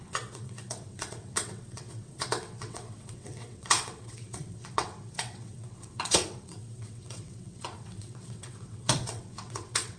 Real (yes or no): no